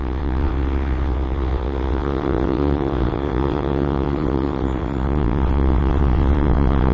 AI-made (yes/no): yes